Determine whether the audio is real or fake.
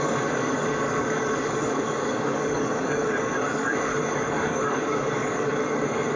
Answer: fake